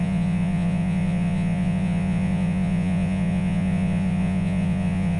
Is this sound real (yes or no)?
no